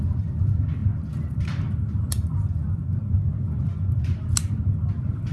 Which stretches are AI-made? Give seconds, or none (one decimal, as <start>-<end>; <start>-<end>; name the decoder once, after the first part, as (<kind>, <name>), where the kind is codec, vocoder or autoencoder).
none